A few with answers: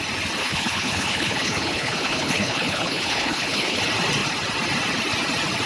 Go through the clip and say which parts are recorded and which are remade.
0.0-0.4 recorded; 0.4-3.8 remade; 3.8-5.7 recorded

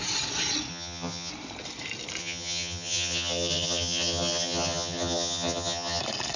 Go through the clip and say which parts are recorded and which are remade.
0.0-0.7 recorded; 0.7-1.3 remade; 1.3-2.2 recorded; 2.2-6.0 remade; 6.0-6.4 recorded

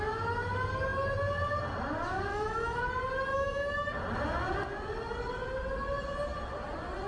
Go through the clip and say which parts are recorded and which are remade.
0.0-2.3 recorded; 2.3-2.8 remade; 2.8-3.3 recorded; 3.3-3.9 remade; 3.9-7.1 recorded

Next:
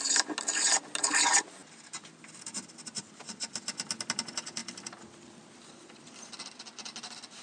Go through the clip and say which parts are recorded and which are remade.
0.0-7.4 recorded

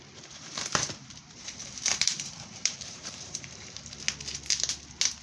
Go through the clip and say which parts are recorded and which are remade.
0.0-1.0 recorded; 1.0-4.0 remade; 4.0-5.2 recorded

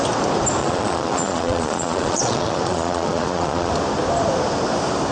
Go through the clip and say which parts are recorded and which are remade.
0.0-0.6 recorded; 0.6-3.7 remade; 3.7-5.1 recorded

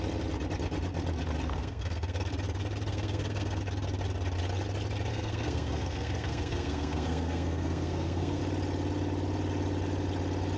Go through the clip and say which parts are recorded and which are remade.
0.0-1.5 recorded; 1.5-2.3 remade; 2.3-2.9 recorded; 2.9-3.6 remade; 3.6-5.1 recorded; 5.1-8.4 remade; 8.4-10.6 recorded

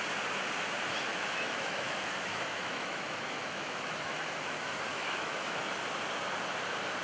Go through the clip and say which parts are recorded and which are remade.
0.0-1.1 recorded; 1.1-4.3 remade; 4.3-4.9 recorded; 4.9-5.7 remade; 5.7-7.0 recorded